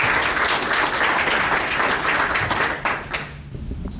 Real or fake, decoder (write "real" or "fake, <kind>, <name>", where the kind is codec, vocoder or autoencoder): real